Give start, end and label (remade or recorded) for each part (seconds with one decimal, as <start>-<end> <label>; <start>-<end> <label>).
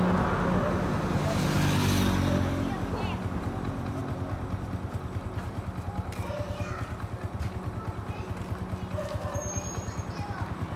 0.0-10.8 recorded